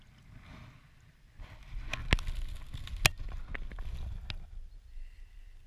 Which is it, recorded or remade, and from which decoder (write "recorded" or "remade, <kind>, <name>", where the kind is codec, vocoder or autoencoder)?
recorded